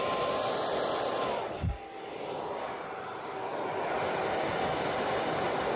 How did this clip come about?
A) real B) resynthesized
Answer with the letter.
A